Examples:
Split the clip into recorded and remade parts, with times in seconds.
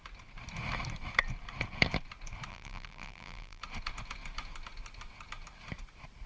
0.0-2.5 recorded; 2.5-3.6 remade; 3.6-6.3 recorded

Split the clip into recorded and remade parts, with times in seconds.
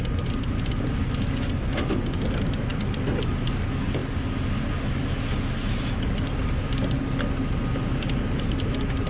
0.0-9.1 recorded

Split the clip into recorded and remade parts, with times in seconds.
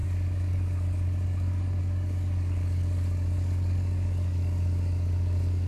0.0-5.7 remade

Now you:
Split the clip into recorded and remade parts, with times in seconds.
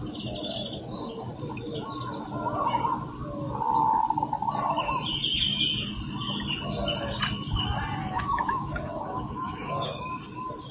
0.0-8.0 recorded; 8.0-10.1 remade; 10.1-10.7 recorded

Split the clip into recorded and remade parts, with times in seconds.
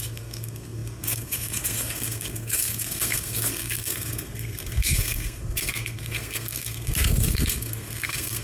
0.0-8.4 remade